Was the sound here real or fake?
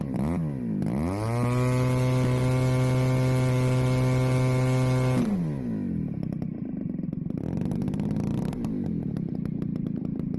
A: real